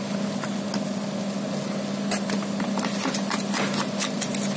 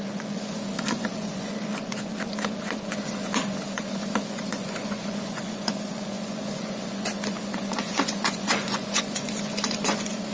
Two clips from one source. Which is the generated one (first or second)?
second